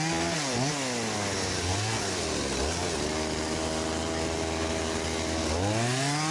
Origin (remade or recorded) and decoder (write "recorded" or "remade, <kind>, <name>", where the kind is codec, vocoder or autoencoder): recorded